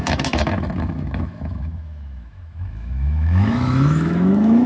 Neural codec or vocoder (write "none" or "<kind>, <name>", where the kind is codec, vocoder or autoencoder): autoencoder, DAC-VAE